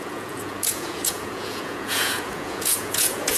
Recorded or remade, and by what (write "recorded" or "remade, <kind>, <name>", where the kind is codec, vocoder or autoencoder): remade, vocoder, Vocos